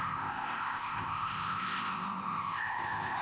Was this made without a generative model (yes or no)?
no